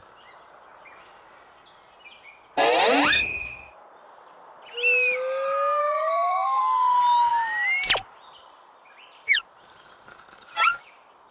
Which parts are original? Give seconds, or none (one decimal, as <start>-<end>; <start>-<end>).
0.0-5.8; 6.6-11.3